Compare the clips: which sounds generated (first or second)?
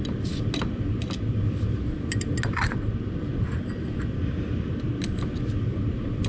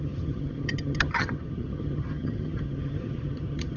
second